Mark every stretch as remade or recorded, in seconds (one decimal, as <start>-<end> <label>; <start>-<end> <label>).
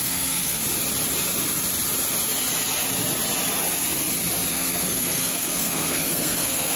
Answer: 0.0-0.6 remade; 0.6-4.5 recorded; 4.5-6.8 remade